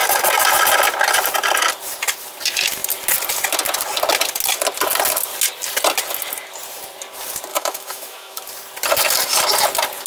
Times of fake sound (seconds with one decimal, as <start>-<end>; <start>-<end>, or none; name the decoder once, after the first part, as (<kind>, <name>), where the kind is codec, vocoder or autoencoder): 7.5-8.4 (autoencoder, DAC-VAE)